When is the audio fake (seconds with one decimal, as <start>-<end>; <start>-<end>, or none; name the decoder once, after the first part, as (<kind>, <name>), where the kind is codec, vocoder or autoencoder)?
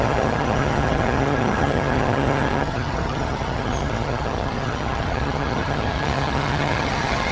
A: 0.0-7.3 (vocoder, HiFi-GAN)